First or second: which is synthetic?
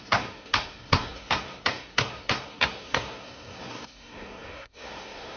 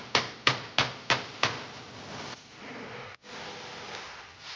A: first